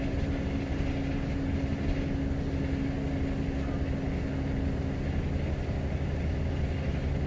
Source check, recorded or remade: recorded